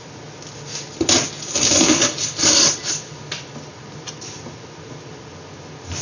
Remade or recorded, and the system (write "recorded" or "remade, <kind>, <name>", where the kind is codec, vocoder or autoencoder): recorded